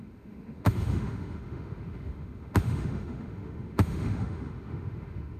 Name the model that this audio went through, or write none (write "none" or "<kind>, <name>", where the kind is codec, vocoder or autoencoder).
autoencoder, DAC-VAE